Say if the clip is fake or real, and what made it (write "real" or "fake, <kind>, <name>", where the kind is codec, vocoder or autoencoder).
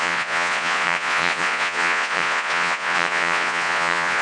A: fake, vocoder, Vocos